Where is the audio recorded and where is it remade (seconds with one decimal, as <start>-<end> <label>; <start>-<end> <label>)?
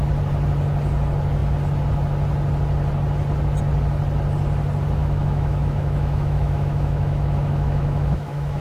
0.0-5.0 recorded; 5.0-8.6 remade